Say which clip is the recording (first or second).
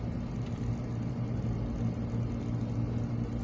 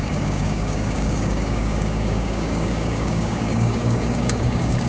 first